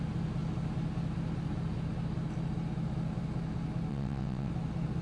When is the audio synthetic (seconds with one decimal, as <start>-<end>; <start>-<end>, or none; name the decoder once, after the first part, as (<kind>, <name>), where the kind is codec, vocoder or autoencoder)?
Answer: 3.9-4.5 (vocoder, WaveNeXt)

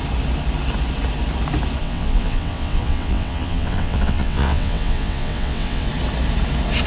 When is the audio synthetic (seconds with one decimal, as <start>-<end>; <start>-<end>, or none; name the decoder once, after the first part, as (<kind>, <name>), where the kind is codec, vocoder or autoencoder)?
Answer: 1.8-5.9 (vocoder, WaveNeXt)